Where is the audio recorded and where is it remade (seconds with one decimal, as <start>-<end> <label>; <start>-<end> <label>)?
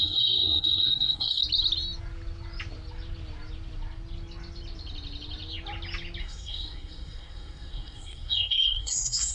0.0-1.4 remade; 1.4-6.2 recorded; 6.2-9.3 remade